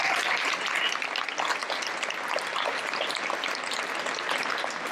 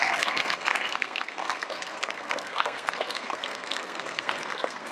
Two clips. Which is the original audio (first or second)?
first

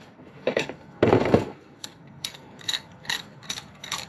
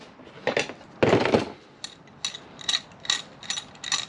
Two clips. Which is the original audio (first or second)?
second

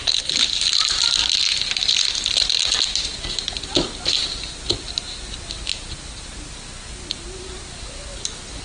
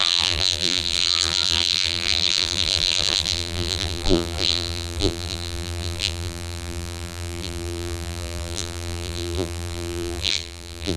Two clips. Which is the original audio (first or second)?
first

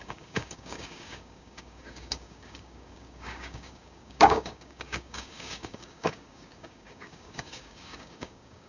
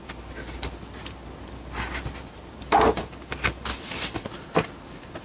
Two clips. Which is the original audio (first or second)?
second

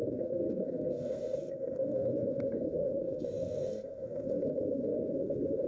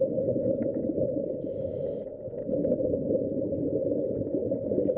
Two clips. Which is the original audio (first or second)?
second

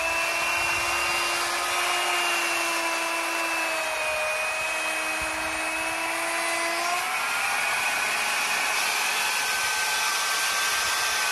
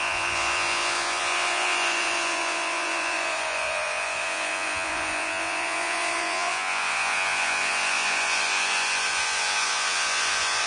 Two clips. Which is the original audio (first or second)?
first